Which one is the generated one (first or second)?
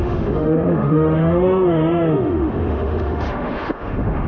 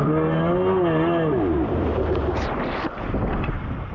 first